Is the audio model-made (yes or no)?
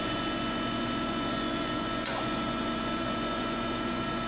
yes